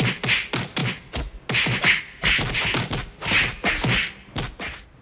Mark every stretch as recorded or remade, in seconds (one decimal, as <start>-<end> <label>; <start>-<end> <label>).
0.0-5.0 recorded